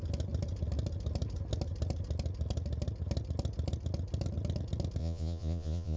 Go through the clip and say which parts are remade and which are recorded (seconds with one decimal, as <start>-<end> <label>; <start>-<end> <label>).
0.0-5.0 recorded; 5.0-6.0 remade

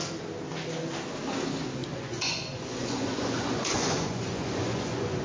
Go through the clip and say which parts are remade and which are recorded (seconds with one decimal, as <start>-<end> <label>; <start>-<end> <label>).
0.0-1.8 recorded; 1.8-5.2 remade

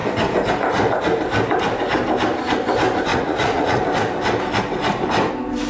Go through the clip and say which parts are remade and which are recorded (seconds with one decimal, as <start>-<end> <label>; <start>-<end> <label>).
0.0-3.1 recorded; 3.1-3.8 remade; 3.8-5.7 recorded

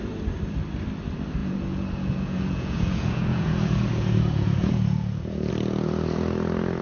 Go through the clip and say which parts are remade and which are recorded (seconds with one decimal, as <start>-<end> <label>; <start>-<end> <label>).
0.0-1.4 recorded; 1.4-5.5 remade; 5.5-6.8 recorded

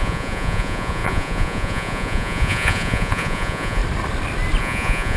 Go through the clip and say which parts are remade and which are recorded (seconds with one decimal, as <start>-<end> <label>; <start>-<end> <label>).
0.0-3.8 remade; 3.8-4.6 recorded; 4.6-5.2 remade